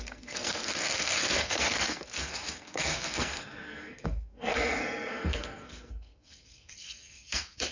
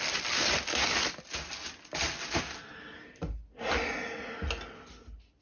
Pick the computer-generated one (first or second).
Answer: first